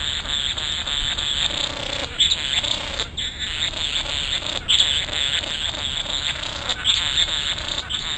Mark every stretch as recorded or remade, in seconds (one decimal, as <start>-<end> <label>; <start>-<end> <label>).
0.0-8.2 recorded